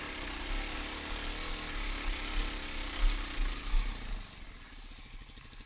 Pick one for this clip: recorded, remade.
recorded